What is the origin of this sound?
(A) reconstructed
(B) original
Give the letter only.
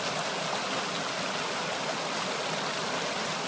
B